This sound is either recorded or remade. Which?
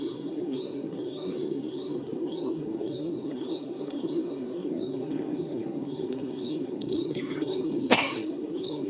remade